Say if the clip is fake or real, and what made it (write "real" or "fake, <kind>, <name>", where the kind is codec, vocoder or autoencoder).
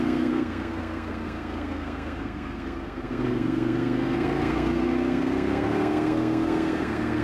fake, codec, SNAC